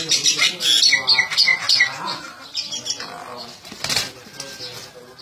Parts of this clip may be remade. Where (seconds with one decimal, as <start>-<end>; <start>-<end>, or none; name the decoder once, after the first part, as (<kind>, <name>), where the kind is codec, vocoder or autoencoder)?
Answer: none